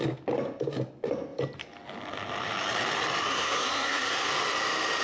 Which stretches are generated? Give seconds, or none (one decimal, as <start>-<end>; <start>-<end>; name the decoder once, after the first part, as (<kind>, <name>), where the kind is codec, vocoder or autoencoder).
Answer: 3.3-4.3 (codec, SNAC)